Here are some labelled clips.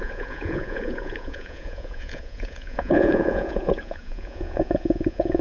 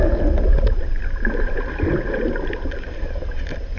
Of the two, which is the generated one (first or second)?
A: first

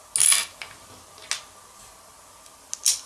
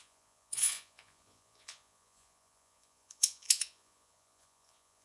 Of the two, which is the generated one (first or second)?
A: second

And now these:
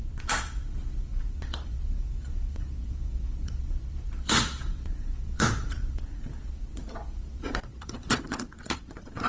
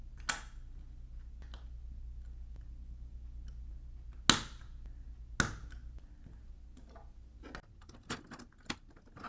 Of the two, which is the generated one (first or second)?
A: first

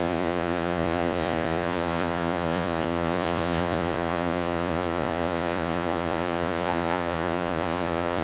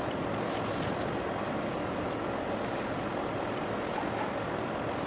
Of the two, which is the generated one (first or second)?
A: first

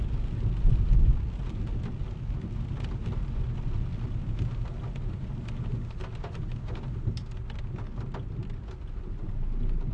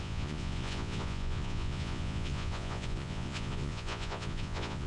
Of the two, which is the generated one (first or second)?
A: second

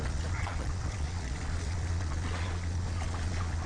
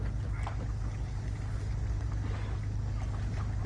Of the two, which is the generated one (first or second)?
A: first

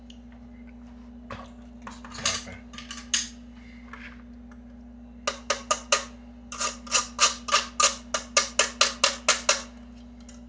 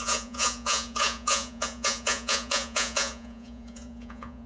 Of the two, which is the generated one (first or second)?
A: second